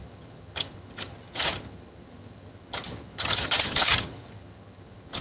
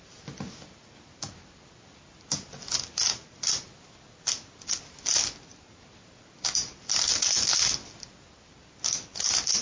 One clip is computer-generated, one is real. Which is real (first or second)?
second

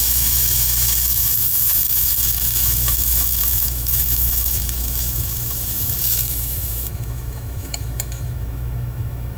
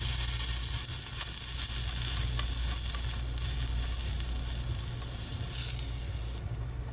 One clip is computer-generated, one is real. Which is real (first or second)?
second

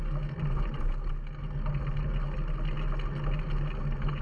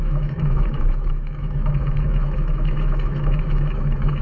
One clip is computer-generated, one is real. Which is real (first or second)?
first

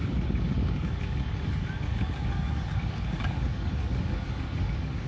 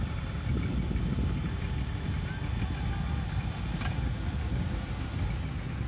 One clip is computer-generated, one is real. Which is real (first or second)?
second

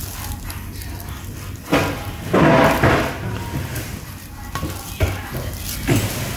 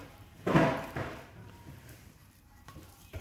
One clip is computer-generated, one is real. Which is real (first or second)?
first